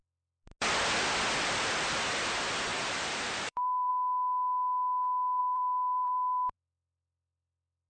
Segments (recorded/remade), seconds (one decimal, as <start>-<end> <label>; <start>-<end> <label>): 0.0-2.7 recorded; 2.7-3.9 remade; 3.9-5.4 recorded; 5.4-6.5 remade; 6.5-7.9 recorded